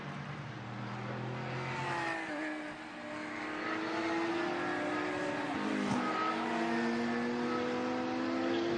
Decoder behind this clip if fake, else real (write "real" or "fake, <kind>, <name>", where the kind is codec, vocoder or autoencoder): real